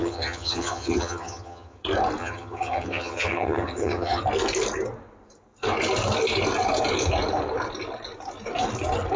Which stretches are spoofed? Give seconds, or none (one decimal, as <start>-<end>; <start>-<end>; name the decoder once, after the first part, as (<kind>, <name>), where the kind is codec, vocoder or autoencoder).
0.0-1.8 (vocoder, HiFi-GAN); 2.2-4.2